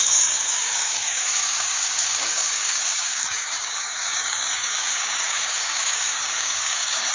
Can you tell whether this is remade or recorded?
remade